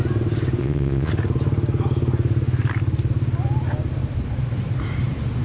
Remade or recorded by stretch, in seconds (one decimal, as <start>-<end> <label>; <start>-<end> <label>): 0.0-0.6 recorded; 0.6-1.1 remade; 1.1-5.4 recorded